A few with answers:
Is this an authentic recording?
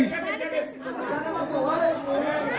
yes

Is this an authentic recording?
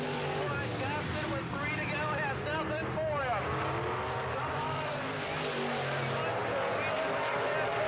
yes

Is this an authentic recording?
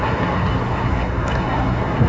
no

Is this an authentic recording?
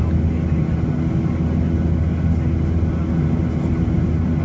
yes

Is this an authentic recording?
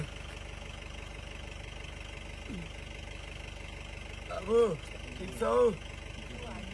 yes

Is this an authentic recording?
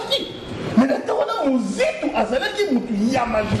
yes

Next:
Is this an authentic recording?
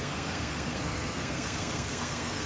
no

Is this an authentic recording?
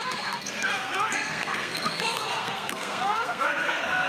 no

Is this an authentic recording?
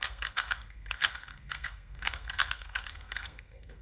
no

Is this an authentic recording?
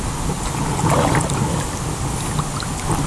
yes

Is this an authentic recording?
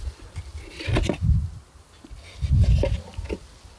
yes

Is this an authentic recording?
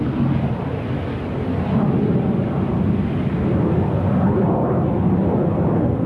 yes